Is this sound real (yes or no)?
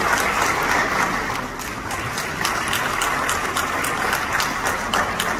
yes